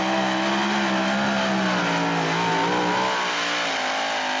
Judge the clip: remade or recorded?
recorded